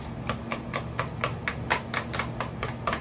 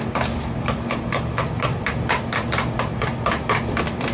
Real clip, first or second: first